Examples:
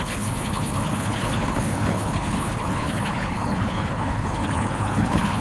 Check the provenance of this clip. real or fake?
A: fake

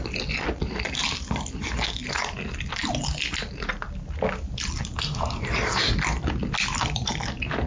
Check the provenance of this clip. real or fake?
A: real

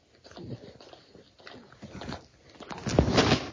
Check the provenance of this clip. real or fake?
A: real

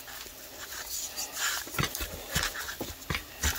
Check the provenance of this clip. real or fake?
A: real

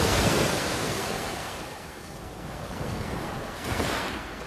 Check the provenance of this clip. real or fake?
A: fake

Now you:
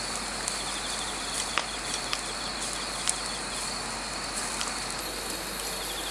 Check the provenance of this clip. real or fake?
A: real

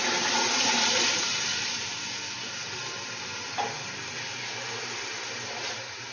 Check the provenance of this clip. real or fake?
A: real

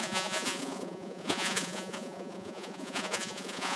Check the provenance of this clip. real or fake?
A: fake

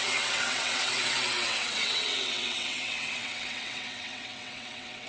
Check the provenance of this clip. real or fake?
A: fake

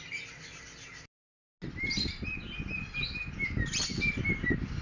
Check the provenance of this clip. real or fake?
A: real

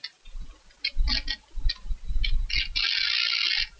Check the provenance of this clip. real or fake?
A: real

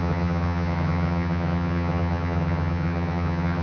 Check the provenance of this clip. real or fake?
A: fake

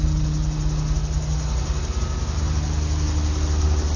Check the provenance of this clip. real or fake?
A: real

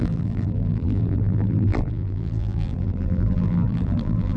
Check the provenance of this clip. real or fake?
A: fake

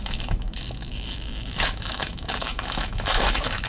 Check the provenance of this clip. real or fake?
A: fake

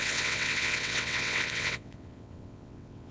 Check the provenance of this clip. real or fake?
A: fake